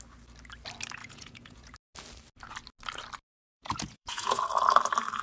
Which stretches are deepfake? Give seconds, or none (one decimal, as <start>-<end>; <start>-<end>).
1.0-1.7; 3.4-4.4